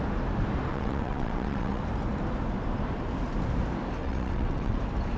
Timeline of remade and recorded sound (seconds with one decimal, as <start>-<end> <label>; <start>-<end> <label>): 0.0-0.7 recorded; 0.7-1.8 remade; 1.8-4.0 recorded; 4.0-4.8 remade; 4.8-5.2 recorded